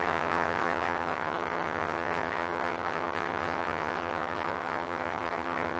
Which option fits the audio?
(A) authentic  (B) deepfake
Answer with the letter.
B